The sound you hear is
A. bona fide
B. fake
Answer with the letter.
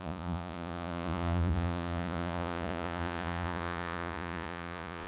B